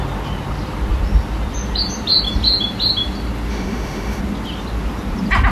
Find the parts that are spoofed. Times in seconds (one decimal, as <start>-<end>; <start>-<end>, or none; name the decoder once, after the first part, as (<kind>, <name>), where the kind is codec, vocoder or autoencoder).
3.5-4.2 (autoencoder, DAC-VAE)

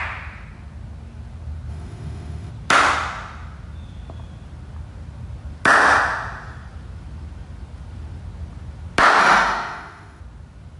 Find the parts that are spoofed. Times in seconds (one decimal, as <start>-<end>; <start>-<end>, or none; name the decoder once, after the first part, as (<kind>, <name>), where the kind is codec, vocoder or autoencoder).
1.7-2.5 (autoencoder, DAC-VAE); 9.2-10.2

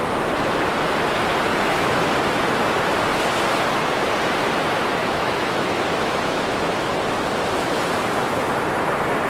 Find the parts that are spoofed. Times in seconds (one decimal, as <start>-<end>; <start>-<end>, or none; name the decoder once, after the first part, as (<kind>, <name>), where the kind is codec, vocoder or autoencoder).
1.5-2.0 (autoencoder, DAC-VAE); 5.0-6.9

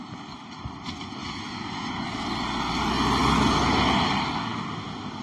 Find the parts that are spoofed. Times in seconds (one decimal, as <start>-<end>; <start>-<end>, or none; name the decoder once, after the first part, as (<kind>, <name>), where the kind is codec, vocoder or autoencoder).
1.2-1.9 (autoencoder, DAC-VAE)